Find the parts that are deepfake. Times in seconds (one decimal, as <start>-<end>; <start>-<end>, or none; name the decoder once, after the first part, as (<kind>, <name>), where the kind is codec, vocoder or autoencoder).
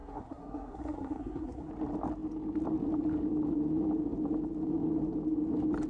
0.0-1.7 (codec, SNAC)